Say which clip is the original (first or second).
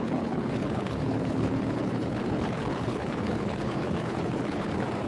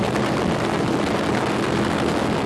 second